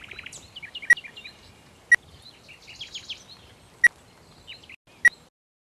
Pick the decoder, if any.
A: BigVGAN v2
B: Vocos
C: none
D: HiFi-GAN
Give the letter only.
C